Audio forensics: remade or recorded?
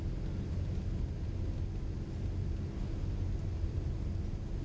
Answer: recorded